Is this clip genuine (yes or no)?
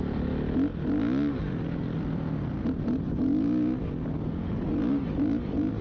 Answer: yes